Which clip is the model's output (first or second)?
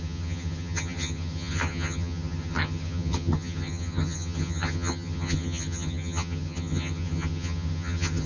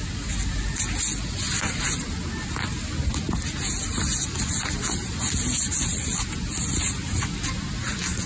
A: first